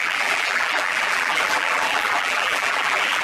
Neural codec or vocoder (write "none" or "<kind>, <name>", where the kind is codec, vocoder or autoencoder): vocoder, BigVGAN v2